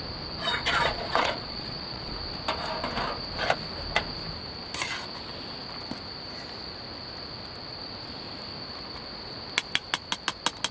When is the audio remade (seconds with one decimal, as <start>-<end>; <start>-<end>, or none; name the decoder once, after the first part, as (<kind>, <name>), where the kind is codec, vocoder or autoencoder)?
0.5-2.1 (vocoder, Vocos)